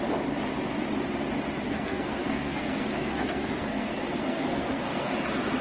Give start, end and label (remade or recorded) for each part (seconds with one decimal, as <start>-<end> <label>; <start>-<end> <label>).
0.0-1.7 recorded; 1.7-5.1 remade; 5.1-5.6 recorded